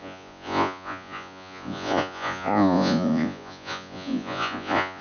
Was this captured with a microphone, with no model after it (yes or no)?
no